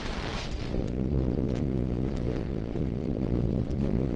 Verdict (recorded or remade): remade